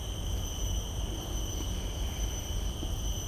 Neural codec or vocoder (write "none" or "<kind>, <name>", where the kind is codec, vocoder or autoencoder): none